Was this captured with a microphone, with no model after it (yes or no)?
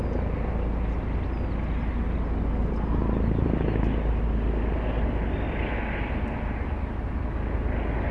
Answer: yes